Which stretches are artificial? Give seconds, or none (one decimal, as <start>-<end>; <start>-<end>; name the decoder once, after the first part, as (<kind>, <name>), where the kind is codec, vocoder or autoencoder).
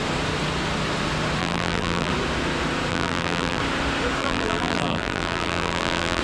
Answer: 1.4-2.1 (vocoder, BigVGAN v2); 2.9-3.6; 4.2-6.2